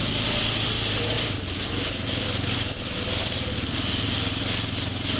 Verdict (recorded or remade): recorded